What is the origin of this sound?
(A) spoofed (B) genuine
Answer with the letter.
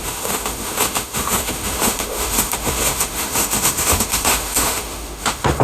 A